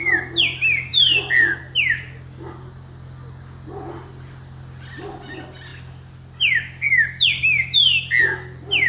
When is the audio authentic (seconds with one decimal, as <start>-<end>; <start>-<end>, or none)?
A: 0.0-0.9; 1.6-8.9